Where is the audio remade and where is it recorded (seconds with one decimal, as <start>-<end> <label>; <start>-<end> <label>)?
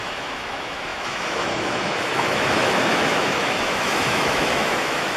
0.0-5.2 remade